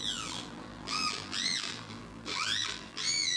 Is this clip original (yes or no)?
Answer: no